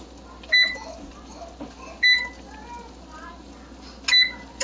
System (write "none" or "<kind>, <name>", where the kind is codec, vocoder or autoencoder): none